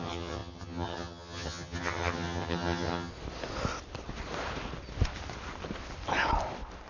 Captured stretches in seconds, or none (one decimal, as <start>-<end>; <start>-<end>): 3.1-6.9